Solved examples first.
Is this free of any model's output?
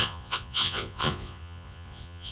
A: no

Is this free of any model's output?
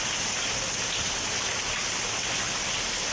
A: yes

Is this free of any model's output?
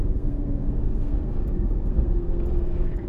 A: no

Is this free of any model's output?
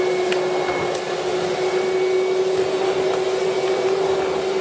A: yes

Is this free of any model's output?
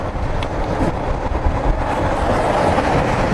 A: yes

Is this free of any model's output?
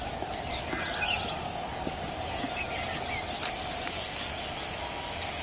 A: yes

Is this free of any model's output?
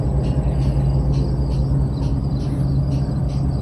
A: yes